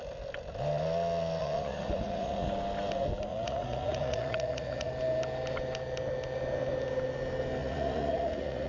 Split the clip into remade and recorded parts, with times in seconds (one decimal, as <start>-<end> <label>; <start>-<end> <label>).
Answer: 0.0-1.4 recorded; 1.4-2.5 remade; 2.5-3.3 recorded; 3.3-4.9 remade; 4.9-7.6 recorded; 7.6-8.7 remade